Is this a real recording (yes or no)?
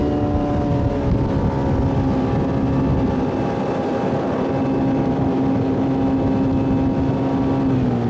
yes